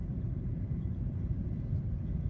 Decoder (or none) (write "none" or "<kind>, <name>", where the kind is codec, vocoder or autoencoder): vocoder, BigVGAN v2